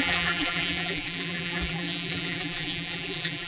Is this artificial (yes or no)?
yes